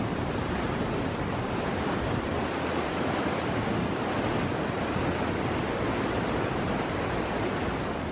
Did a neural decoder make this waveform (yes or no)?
yes